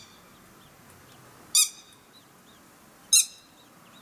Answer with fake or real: real